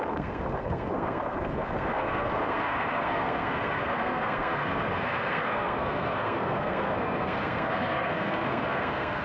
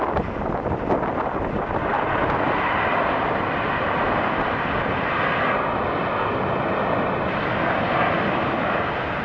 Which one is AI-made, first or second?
first